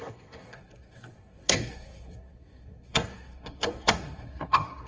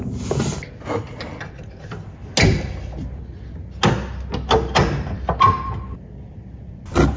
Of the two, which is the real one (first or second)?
second